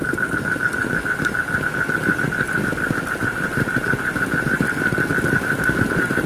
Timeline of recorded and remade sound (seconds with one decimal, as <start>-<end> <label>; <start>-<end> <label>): 0.0-0.8 recorded; 0.8-1.7 remade; 1.7-2.1 recorded; 2.1-5.4 remade; 5.4-6.3 recorded